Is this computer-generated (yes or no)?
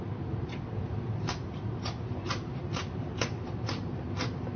no